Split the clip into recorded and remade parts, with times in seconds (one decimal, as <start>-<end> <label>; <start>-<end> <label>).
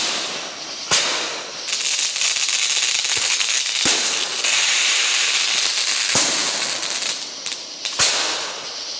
0.0-3.1 recorded; 3.1-4.7 remade; 4.7-9.0 recorded